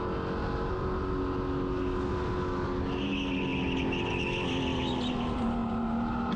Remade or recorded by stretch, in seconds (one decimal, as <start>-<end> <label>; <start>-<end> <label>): 0.0-6.4 recorded